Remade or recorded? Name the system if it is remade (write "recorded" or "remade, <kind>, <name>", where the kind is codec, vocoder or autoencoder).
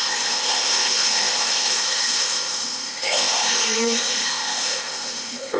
remade, codec, ZipCodec